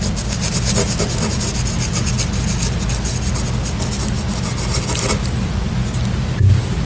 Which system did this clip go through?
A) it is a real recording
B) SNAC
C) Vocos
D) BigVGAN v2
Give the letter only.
A